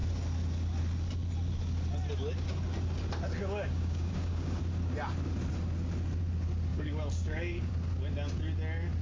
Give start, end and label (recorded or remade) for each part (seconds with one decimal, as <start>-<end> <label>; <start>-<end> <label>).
0.0-3.4 recorded; 3.4-4.6 remade; 4.6-6.7 recorded; 6.7-7.7 remade; 7.7-9.0 recorded